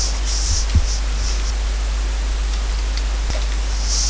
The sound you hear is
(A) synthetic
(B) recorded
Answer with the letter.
B